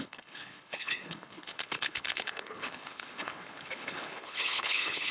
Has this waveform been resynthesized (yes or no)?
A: yes